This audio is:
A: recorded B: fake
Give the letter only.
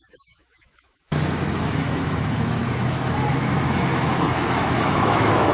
B